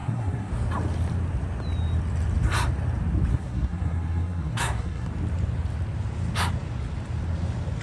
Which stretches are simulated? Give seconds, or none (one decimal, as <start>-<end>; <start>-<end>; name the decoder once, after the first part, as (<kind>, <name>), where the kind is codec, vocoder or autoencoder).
0.0-0.5 (codec, SNAC); 3.3-5.1